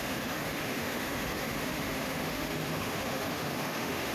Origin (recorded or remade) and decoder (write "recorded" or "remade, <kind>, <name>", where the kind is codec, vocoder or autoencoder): remade, autoencoder, DAC-VAE